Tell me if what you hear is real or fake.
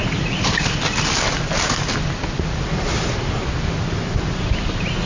real